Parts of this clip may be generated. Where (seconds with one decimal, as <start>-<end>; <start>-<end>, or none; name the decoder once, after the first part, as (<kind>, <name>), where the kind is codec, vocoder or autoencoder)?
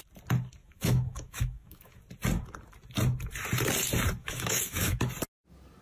0.6-2.0 (autoencoder, DAC-VAE); 4.2-5.0